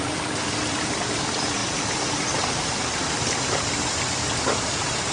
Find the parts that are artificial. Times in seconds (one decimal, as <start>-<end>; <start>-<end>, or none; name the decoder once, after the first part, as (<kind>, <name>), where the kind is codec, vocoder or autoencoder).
0.0-1.6 (vocoder, BigVGAN v2)